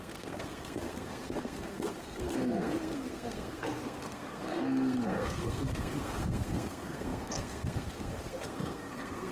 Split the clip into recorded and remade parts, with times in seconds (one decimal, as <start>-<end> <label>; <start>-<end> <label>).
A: 0.0-9.3 remade